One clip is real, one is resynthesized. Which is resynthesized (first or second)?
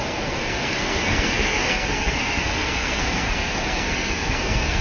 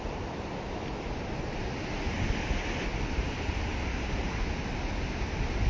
first